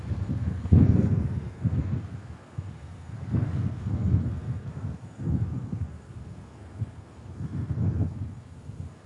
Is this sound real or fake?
fake